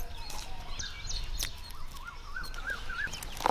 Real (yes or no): yes